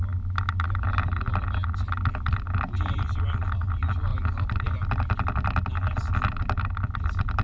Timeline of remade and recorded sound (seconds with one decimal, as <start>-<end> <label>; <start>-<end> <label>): 0.0-7.4 recorded